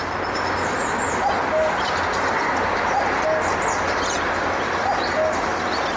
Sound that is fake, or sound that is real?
real